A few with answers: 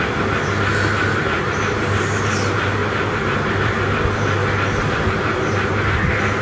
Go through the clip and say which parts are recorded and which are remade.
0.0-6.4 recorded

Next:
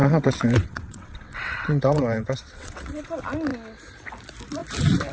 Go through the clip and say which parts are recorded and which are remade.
0.0-3.1 remade; 3.1-5.1 recorded

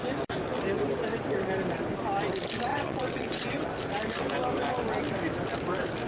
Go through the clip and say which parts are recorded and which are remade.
0.0-2.7 recorded; 2.7-3.7 remade; 3.7-6.1 recorded

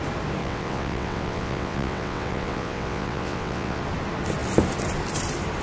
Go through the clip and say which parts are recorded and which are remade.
0.0-0.4 recorded; 0.4-3.8 remade; 3.8-5.6 recorded

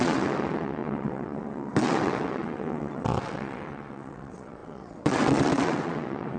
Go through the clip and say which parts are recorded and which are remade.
0.0-6.4 remade

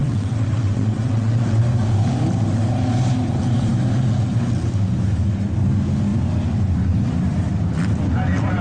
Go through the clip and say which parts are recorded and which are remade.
0.0-1.6 remade; 1.6-8.6 recorded